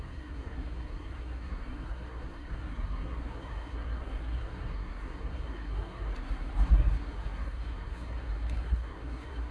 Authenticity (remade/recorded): remade